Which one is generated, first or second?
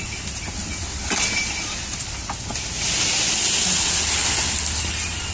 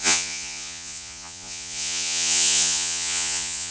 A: second